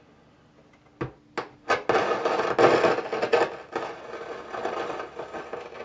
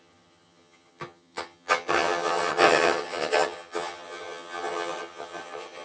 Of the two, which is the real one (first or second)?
first